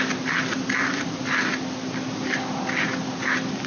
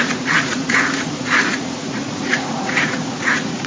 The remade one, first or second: second